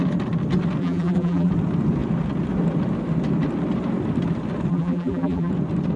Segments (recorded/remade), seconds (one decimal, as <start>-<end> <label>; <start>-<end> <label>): 0.0-0.8 recorded; 0.8-1.5 remade; 1.5-4.7 recorded; 4.7-5.5 remade; 5.5-6.0 recorded

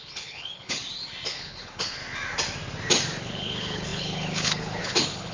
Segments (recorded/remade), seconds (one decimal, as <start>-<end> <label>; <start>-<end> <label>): 0.0-0.8 remade; 0.8-1.3 recorded; 1.3-2.0 remade; 2.0-3.2 recorded; 3.2-5.3 remade

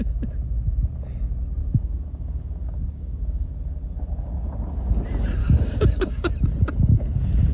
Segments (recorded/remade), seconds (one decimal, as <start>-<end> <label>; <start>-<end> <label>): 0.0-1.6 recorded; 1.6-3.5 remade; 3.5-5.4 recorded; 5.4-6.3 remade; 6.3-7.5 recorded

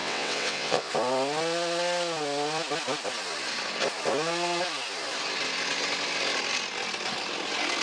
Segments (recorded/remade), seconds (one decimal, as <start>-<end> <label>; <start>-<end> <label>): 0.0-0.9 remade; 0.9-7.8 recorded

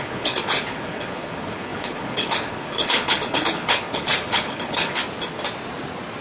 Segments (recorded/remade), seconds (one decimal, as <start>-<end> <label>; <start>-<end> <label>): 0.0-5.0 remade; 5.0-6.2 recorded

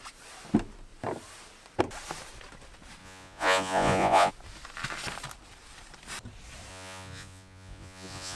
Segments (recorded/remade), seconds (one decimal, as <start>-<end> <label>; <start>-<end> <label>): 0.0-3.0 recorded; 3.0-4.3 remade; 4.3-6.7 recorded; 6.7-8.4 remade

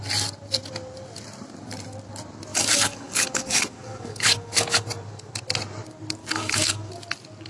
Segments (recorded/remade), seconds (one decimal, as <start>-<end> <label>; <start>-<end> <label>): 0.0-2.5 recorded; 2.5-4.9 remade; 4.9-6.2 recorded; 6.2-6.9 remade; 6.9-7.5 recorded

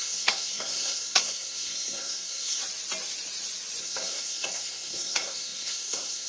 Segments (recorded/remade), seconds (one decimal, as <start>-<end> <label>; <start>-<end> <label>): 0.0-2.6 remade; 2.6-3.8 recorded; 3.8-6.3 remade